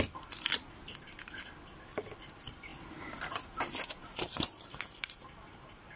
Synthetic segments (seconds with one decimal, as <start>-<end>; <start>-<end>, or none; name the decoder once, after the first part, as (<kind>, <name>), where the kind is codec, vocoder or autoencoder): 4.0-5.2 (vocoder, BigVGAN v2)